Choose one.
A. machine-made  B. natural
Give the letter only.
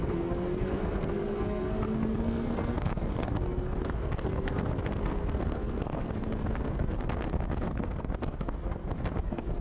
A